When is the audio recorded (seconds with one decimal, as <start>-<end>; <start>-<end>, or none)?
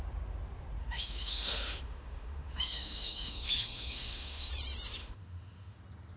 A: 0.0-0.8; 4.5-5.0; 5.8-6.2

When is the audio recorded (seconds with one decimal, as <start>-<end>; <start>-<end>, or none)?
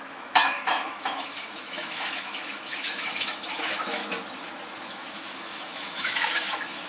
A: 4.0-4.8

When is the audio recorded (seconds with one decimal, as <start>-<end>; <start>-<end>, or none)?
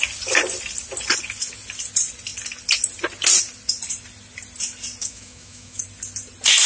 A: 0.0-5.0; 5.8-6.7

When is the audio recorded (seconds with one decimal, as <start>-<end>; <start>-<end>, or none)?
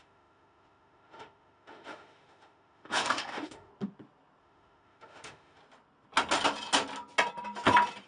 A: 3.7-4.4; 5.6-8.1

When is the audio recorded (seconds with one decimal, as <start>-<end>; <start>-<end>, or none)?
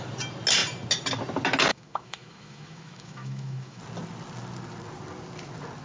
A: 0.0-1.7; 3.8-5.8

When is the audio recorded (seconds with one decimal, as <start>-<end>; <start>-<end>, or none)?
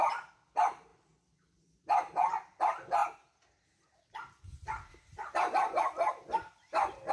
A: 0.0-7.1